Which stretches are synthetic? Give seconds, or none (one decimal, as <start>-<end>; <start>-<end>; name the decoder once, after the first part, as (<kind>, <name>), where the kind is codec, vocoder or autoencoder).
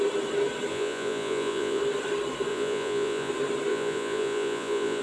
0.7-1.8 (vocoder, Vocos); 2.5-3.3; 3.7-5.0